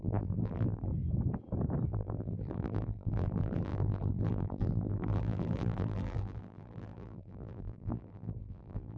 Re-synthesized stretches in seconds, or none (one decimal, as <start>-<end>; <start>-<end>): 0.0-0.9; 1.9-9.0